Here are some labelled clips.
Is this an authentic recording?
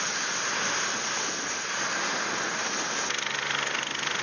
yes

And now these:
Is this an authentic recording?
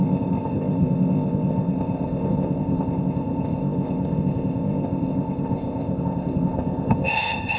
no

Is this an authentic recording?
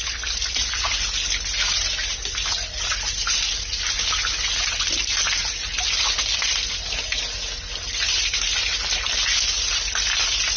yes